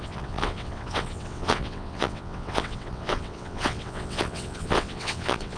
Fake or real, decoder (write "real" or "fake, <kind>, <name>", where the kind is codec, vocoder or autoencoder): fake, vocoder, WaveNeXt